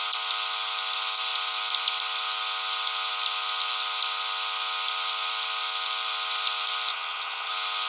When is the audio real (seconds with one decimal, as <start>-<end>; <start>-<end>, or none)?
0.0-6.9; 7.5-7.9